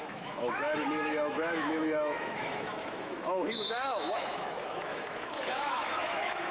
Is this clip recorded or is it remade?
remade